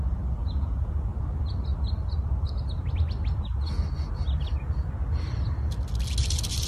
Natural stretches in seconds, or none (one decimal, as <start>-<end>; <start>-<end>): 0.0-0.4; 1.1-6.7